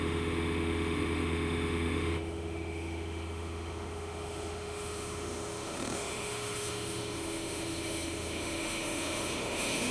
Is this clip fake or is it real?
fake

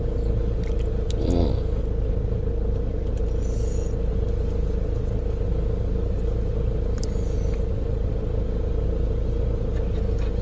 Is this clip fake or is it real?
real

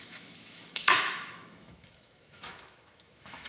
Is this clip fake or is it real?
fake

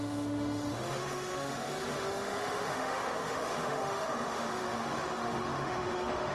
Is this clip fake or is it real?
fake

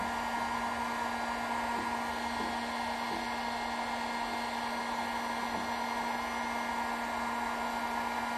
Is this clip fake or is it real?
real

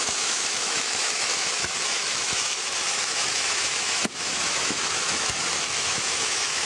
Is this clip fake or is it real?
fake